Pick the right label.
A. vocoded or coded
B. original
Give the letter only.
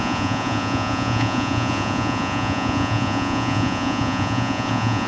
A